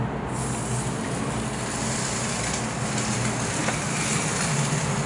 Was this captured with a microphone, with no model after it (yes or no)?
yes